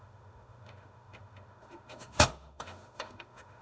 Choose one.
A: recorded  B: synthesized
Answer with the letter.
B